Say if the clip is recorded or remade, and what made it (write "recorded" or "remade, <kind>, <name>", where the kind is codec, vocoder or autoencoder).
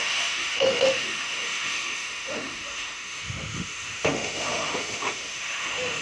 remade, autoencoder, DAC-VAE